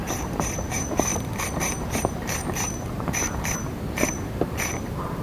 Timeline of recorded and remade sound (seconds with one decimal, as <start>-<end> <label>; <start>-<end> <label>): 0.0-5.2 remade